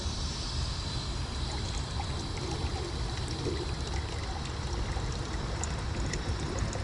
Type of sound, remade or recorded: recorded